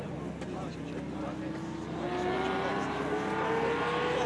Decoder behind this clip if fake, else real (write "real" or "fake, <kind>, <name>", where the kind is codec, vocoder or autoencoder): real